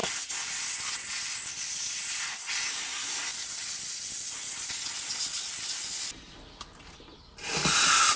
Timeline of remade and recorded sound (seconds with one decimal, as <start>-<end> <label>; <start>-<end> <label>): 0.0-8.2 recorded

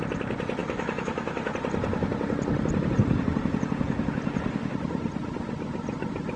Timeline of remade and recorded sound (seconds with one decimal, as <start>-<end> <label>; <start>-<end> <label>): 0.0-0.6 recorded; 0.6-1.5 remade; 1.5-6.4 recorded

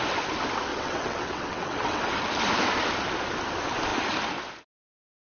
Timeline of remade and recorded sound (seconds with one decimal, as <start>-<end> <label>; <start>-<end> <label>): 0.0-0.7 recorded; 0.7-2.0 remade; 2.0-5.3 recorded

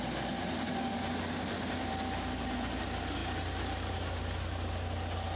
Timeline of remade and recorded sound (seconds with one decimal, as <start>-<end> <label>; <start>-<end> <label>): 0.0-5.4 recorded

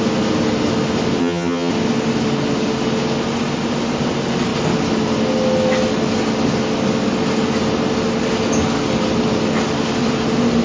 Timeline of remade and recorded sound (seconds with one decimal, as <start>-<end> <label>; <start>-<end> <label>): 0.0-1.2 recorded; 1.2-1.7 remade; 1.7-10.6 recorded

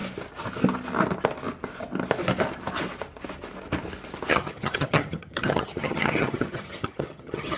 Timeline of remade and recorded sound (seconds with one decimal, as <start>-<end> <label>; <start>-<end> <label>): 0.0-4.3 recorded; 4.3-7.6 remade

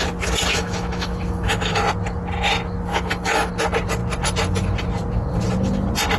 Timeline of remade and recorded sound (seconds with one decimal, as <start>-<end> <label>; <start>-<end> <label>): 0.0-0.5 recorded; 0.5-1.8 remade; 1.8-2.9 recorded; 2.9-3.5 remade; 3.5-6.2 recorded